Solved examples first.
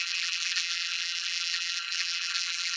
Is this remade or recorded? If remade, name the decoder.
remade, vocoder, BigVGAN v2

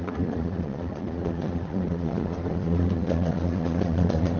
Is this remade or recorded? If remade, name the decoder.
remade, vocoder, Vocos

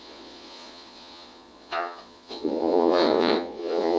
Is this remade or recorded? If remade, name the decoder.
remade, vocoder, Vocos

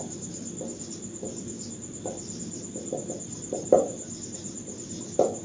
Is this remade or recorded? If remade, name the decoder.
recorded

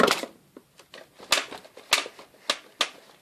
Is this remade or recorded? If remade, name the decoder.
recorded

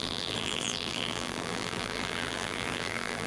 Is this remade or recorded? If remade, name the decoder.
remade, vocoder, BigVGAN v2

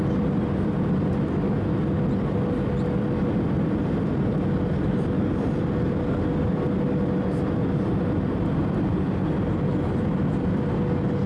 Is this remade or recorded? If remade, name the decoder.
recorded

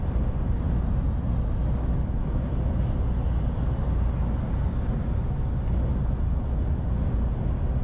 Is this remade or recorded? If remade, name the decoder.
recorded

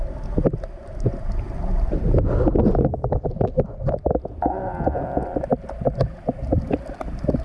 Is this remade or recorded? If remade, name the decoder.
recorded